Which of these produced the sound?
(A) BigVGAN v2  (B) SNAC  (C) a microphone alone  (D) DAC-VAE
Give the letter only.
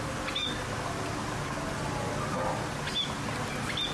C